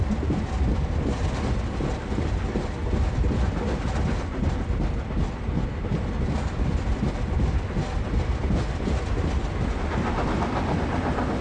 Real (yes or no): yes